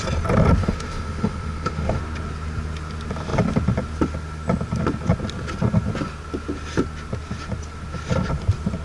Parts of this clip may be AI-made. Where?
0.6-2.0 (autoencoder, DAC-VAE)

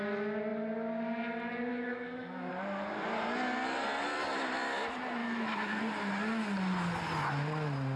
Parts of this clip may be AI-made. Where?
1.7-2.5 (autoencoder, DAC-VAE); 5.2-5.8